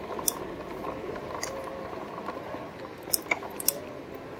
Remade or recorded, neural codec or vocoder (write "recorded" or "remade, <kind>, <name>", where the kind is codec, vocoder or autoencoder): recorded